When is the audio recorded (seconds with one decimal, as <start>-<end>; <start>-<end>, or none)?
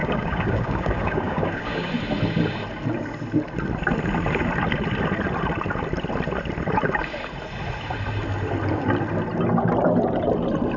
1.9-10.8